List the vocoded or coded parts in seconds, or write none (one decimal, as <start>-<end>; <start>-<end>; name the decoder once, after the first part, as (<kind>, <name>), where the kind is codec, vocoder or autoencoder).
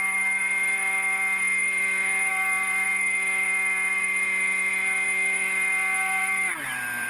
0.0-7.1 (vocoder, BigVGAN v2)